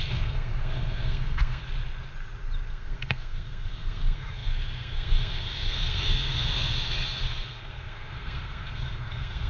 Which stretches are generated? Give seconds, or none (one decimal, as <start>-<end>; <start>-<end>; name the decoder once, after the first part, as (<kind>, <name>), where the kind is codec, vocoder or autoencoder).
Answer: 0.0-1.6 (codec, SNAC); 2.7-9.5